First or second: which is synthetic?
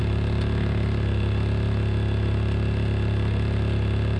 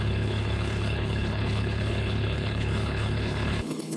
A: second